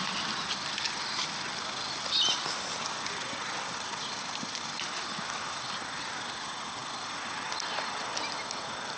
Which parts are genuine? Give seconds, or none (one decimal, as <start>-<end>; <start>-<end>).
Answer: 0.0-9.0

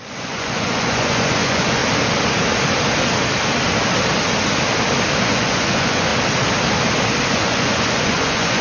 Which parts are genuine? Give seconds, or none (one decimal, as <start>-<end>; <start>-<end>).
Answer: 1.8-5.2; 6.1-7.3